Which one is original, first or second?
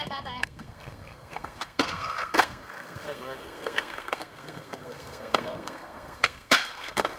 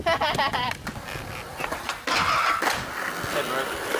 second